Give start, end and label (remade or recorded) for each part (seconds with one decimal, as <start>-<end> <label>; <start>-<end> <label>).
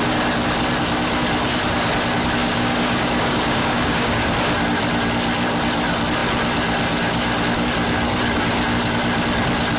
0.0-2.4 recorded; 2.4-4.1 remade; 4.1-9.8 recorded